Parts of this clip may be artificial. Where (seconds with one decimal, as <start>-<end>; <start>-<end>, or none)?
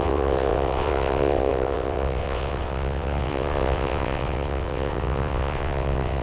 0.0-6.2